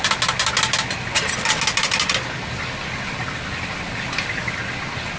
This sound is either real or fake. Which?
real